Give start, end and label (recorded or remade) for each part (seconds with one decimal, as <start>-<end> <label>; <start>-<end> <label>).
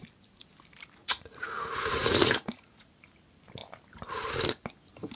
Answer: 0.0-1.0 recorded; 1.0-2.9 remade; 2.9-5.2 recorded